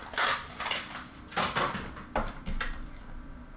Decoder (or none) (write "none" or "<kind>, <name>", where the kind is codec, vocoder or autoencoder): none